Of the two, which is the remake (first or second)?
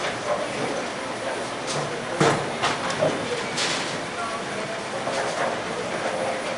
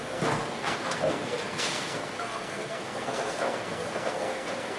second